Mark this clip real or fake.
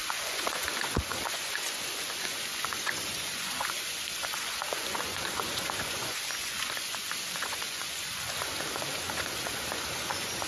fake